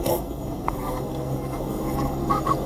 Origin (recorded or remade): remade